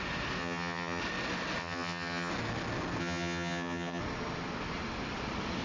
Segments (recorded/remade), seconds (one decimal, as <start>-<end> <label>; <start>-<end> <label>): 0.0-0.4 recorded; 0.4-1.0 remade; 1.0-1.6 recorded; 1.6-2.3 remade; 2.3-3.0 recorded; 3.0-4.0 remade; 4.0-5.6 recorded